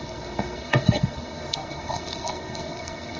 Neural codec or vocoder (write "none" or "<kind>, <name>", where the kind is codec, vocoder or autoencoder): codec, SNAC